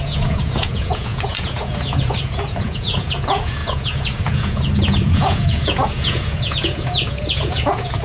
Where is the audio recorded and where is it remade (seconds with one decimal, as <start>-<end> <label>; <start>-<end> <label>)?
0.0-8.0 remade